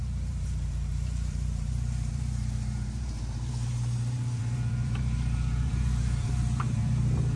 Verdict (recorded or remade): remade